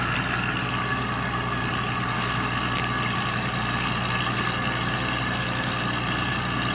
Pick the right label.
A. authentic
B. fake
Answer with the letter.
A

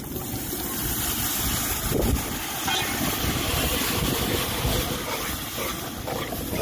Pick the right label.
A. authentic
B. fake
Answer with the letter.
A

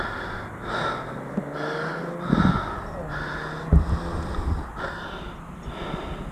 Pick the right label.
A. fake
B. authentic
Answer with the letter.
B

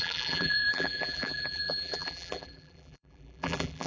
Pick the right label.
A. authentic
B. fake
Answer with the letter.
B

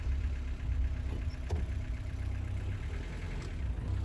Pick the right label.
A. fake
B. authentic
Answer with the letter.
A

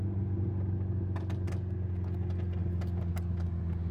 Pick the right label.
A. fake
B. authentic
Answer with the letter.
B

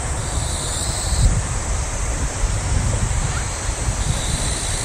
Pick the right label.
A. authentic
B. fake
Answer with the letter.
B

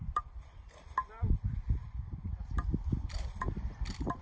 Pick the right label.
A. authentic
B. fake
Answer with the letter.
B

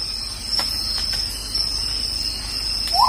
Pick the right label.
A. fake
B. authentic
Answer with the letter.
B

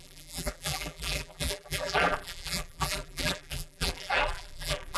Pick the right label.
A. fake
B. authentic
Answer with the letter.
A